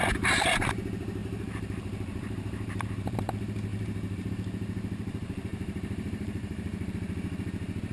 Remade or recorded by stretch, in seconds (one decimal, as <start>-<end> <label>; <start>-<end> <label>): 0.0-0.7 remade; 0.7-1.2 recorded; 1.2-3.3 remade; 3.3-3.7 recorded; 3.7-4.3 remade; 4.3-5.5 recorded; 5.5-6.9 remade; 6.9-7.9 recorded